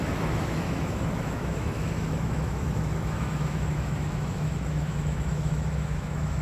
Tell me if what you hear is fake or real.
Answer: fake